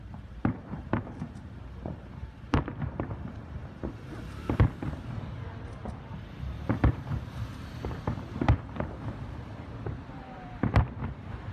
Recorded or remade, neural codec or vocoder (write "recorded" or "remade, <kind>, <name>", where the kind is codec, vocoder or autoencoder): remade, vocoder, BigVGAN v2